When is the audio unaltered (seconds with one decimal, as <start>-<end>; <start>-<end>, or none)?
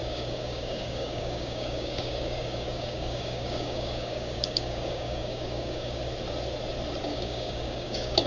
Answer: 6.0-7.0